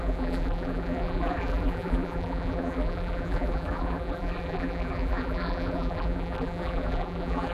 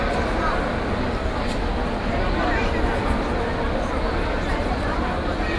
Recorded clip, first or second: second